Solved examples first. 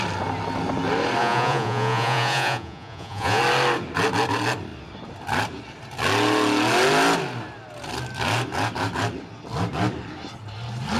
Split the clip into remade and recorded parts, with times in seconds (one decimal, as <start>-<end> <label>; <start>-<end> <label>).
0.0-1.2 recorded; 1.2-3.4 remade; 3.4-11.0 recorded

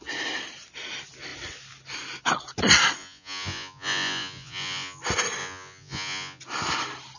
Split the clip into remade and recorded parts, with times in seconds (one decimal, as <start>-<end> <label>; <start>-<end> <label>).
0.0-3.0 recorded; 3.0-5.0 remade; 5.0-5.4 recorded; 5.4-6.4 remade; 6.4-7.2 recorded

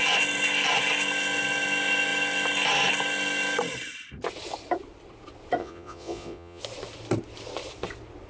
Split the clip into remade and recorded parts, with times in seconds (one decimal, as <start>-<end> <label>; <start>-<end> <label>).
0.0-5.6 recorded; 5.6-6.6 remade; 6.6-8.3 recorded

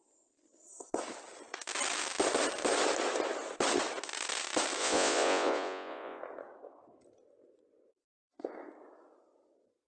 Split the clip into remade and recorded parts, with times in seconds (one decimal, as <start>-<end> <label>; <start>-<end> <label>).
0.0-4.8 recorded; 4.8-6.2 remade; 6.2-9.9 recorded

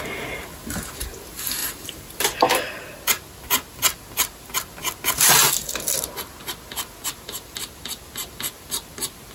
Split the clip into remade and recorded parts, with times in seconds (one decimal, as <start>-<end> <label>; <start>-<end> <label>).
0.0-9.3 recorded